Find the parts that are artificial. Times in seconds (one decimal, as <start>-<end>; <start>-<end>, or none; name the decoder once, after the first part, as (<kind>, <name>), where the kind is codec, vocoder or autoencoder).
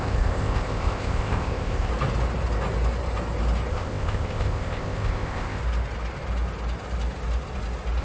0.0-1.9 (codec, ZipCodec); 3.7-5.6